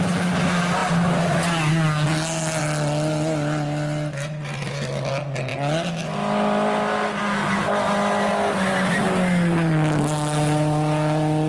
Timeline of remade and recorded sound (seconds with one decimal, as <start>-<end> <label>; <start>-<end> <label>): 0.0-11.5 recorded